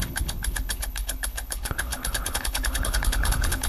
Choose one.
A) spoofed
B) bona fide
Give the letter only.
A